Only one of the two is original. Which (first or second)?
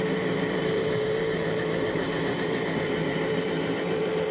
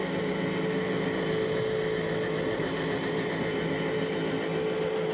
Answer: second